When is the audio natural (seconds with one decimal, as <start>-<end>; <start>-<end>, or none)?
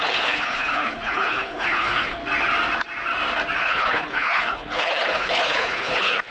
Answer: 2.2-3.6